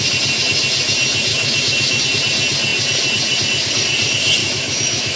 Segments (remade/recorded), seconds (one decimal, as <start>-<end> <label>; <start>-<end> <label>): 0.0-1.3 recorded; 1.3-2.0 remade; 2.0-4.4 recorded; 4.4-5.2 remade